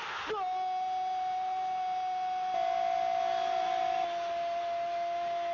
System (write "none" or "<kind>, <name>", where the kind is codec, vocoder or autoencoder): none